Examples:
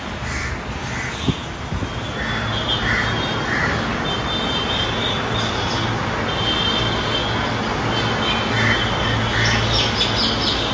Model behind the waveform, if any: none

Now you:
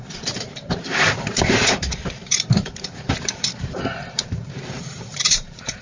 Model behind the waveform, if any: vocoder, BigVGAN v2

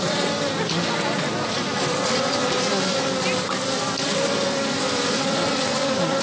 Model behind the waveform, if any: none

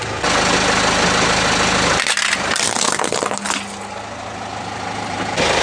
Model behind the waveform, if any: none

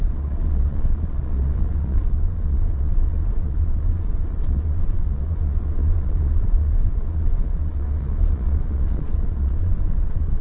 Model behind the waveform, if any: vocoder, Vocos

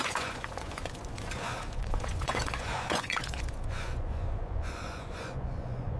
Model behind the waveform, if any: vocoder, Vocos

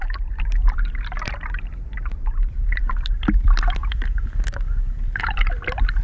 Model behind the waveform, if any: none